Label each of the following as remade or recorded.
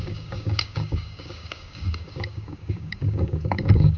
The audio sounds remade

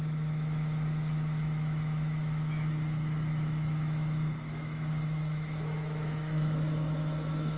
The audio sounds remade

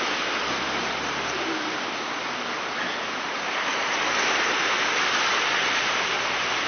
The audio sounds recorded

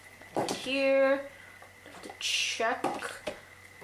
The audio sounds recorded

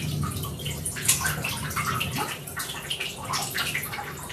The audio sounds recorded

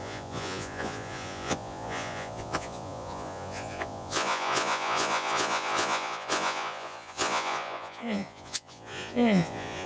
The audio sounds remade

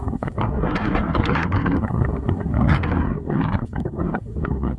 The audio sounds remade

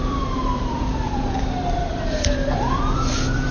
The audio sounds remade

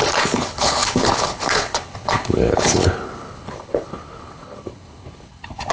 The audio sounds remade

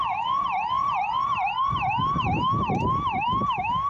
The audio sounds recorded